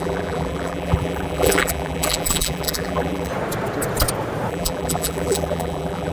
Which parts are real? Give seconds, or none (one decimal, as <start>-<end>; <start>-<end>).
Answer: 3.3-4.5